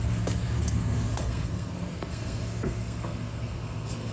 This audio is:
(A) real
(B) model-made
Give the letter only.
B